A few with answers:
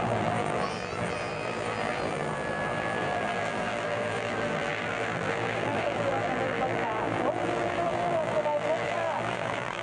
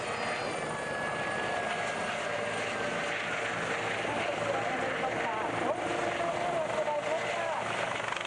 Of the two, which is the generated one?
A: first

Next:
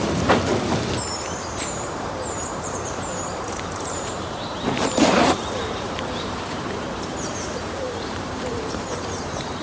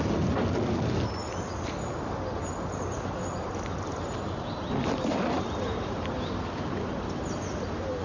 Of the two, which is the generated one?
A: first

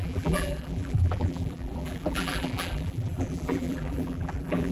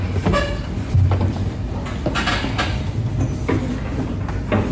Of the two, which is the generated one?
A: first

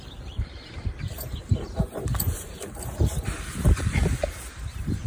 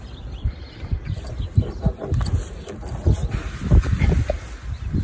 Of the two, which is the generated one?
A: first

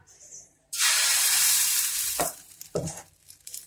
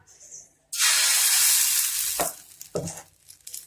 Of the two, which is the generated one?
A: first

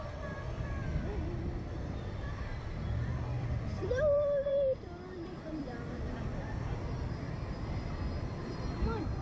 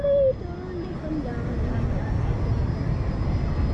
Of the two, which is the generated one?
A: first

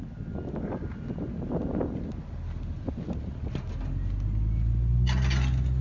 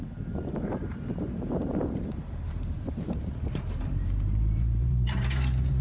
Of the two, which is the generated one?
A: second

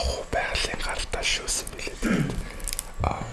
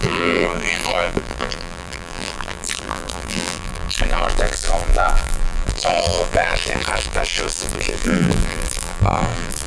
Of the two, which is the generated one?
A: second